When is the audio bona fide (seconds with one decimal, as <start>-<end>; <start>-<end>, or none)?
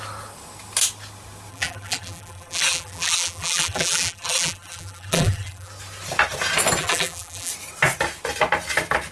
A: 0.0-1.5; 5.7-6.8; 7.5-9.1